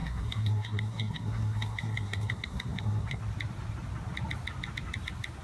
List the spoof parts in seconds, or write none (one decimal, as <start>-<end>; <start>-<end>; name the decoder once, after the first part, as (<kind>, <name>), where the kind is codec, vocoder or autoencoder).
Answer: 0.0-3.2 (codec, SNAC)